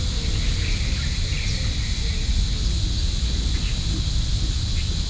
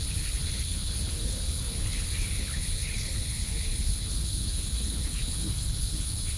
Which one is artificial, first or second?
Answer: second